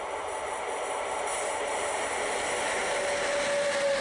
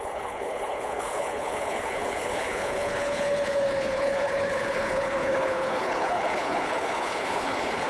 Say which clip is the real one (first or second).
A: first